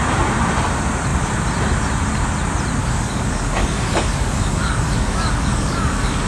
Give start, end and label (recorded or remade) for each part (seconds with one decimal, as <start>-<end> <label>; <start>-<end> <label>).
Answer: 0.0-2.8 recorded; 2.8-6.3 remade